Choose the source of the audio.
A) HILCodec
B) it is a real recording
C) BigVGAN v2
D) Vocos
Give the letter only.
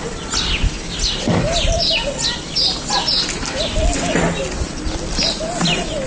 B